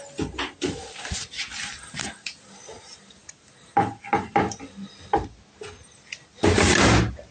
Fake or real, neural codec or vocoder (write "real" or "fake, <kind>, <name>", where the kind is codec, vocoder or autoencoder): real